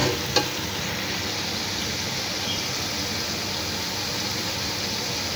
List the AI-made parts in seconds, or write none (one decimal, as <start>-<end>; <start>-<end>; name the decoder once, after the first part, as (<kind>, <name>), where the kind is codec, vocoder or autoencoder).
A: none